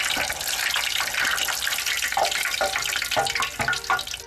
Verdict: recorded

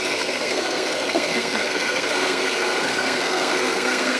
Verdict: remade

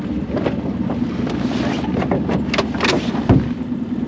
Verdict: recorded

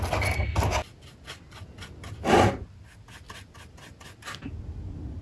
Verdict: recorded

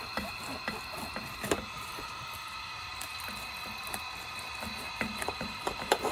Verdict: recorded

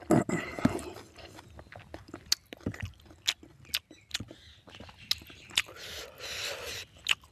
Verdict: recorded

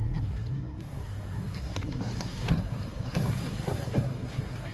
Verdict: remade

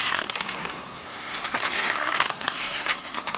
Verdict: remade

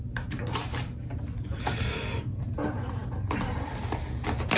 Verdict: recorded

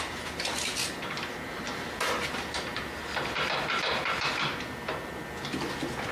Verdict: recorded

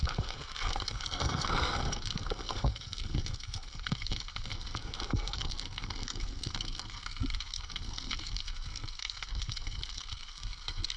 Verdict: remade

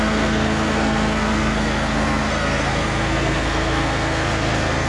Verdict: remade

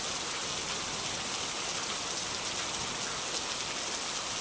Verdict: recorded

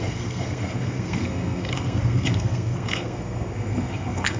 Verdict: remade